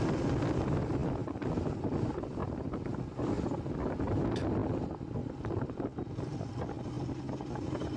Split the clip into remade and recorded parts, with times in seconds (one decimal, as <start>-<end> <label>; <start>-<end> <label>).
0.0-8.0 recorded